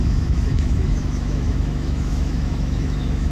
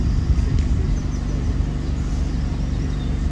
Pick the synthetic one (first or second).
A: first